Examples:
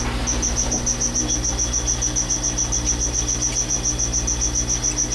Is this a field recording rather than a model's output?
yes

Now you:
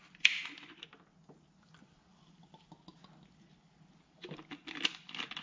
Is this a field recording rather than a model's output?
yes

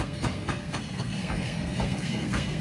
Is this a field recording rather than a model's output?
no